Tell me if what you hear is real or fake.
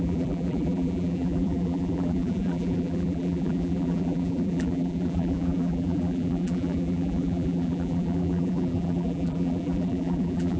fake